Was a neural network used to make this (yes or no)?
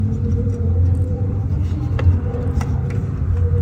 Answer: no